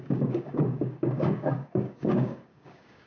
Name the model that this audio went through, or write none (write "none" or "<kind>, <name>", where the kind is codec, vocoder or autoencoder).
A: codec, DAC